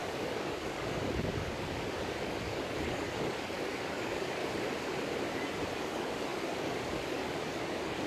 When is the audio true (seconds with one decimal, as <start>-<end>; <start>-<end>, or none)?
4.4-5.8